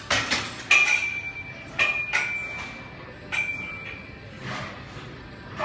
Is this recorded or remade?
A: recorded